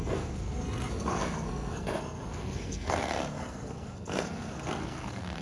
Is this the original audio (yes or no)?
no